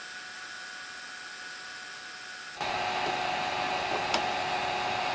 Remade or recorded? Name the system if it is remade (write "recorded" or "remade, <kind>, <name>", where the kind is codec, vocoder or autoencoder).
recorded